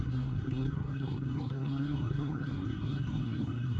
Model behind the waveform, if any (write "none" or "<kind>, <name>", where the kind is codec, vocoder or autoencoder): codec, SNAC